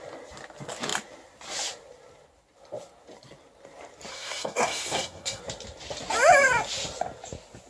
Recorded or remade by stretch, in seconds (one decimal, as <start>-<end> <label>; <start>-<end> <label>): 0.0-4.1 recorded; 4.1-5.4 remade; 5.4-7.7 recorded